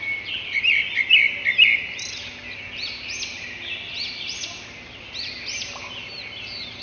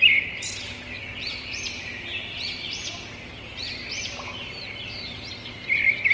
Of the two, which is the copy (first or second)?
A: second